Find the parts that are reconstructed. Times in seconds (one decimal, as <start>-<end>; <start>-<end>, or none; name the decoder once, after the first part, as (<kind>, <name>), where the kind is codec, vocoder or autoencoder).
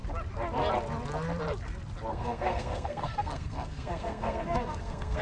2.1-5.2 (codec, SNAC)